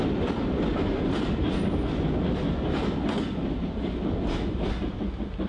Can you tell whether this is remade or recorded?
recorded